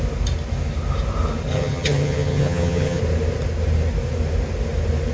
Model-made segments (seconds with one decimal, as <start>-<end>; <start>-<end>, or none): 1.5-3.0

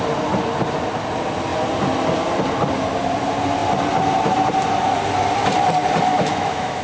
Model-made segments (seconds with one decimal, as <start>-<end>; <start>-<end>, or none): 6.1-6.8

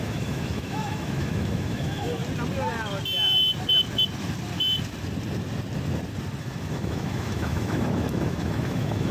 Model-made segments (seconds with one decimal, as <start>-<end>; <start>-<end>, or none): 0.0-2.2; 6.4-9.1

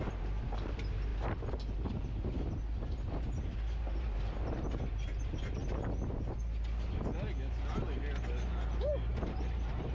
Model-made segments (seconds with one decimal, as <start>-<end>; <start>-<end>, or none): 0.0-1.1; 3.9-5.6; 8.8-9.9